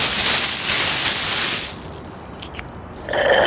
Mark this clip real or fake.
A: real